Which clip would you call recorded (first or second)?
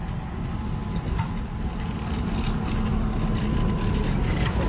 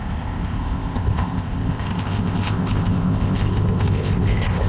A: first